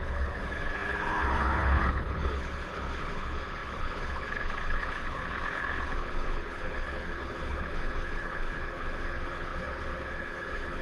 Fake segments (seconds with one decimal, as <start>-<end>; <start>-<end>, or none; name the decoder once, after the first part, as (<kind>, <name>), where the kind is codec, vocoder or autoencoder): 0.0-10.8 (codec, HILCodec)

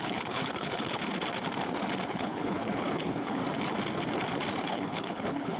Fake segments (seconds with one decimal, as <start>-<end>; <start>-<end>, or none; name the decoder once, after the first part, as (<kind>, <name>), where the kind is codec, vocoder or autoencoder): 0.0-1.0 (codec, HILCodec); 2.1-3.4; 4.6-5.6

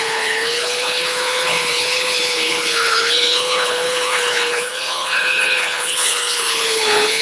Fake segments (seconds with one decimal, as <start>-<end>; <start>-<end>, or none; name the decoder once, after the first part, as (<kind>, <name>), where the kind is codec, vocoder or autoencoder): 0.0-7.2 (codec, HILCodec)

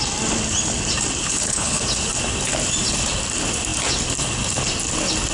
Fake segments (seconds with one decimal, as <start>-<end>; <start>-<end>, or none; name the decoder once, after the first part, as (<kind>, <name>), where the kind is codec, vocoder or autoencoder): 1.2-1.8 (codec, HILCodec)

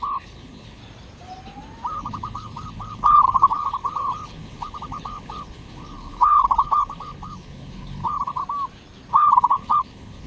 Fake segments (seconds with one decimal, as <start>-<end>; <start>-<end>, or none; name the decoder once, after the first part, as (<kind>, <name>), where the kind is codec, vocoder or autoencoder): 0.0-0.8 (codec, HILCodec); 2.0-8.4; 9.1-10.3

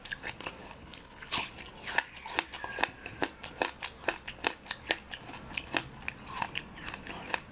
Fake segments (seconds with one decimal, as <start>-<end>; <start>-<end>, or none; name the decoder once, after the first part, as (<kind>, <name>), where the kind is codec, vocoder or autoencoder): 0.6-1.5 (codec, HILCodec)

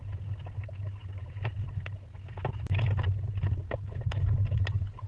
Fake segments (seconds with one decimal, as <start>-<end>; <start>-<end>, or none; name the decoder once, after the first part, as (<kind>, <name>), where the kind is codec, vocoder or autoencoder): none